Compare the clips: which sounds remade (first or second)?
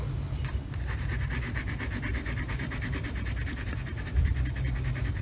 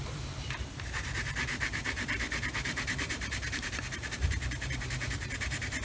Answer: second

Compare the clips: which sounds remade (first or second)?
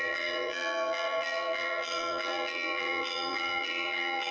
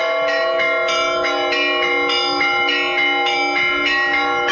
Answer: first